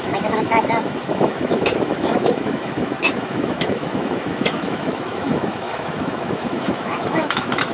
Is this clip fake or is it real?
fake